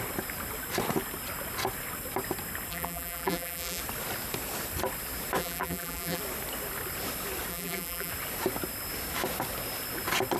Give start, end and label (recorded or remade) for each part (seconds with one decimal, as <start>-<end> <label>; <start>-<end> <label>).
0.0-2.7 recorded; 2.7-3.8 remade; 3.8-5.4 recorded; 5.4-6.2 remade; 6.2-7.5 recorded; 7.5-8.1 remade; 8.1-10.4 recorded